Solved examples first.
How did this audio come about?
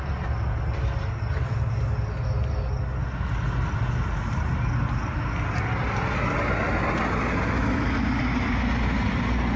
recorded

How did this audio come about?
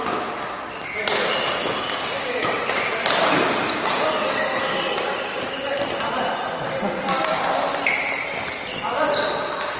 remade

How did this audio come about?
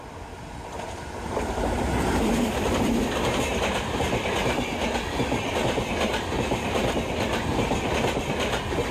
recorded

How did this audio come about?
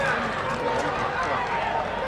recorded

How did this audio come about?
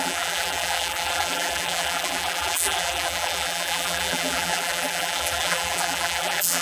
remade